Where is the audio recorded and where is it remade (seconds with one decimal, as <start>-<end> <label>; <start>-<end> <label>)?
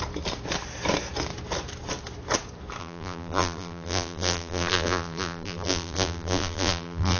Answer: 0.0-2.8 recorded; 2.8-7.2 remade